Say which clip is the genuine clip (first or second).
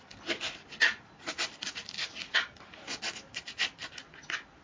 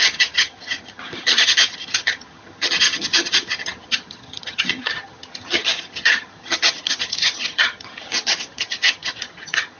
first